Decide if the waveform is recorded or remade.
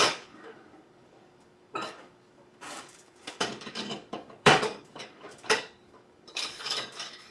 remade